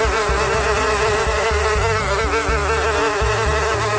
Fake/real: real